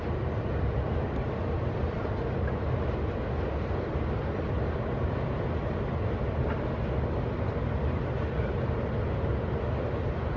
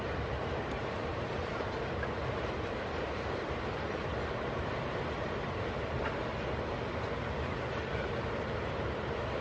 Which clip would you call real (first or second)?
first